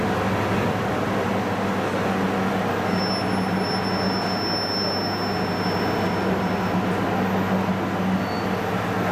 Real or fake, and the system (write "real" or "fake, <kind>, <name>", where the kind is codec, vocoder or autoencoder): real